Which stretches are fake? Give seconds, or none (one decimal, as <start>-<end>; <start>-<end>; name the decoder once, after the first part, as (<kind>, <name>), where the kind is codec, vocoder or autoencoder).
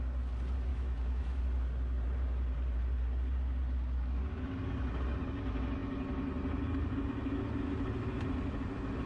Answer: 0.7-1.4 (autoencoder, DAC-VAE)